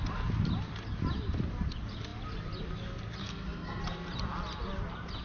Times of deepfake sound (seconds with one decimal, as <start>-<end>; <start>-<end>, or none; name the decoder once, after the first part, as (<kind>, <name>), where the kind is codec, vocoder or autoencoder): 3.2-3.8 (codec, SNAC)